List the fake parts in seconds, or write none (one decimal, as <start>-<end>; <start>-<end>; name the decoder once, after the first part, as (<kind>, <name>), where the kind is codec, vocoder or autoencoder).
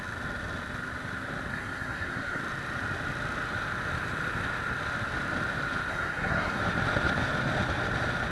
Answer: 1.5-2.4 (codec, SNAC); 5.9-6.6